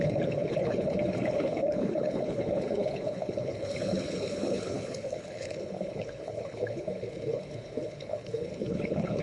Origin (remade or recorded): remade